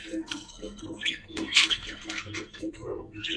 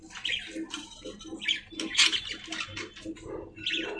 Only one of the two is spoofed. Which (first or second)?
first